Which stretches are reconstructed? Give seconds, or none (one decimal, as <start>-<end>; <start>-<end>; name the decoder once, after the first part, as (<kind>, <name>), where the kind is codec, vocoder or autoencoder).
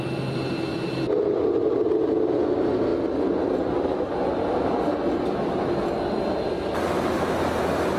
none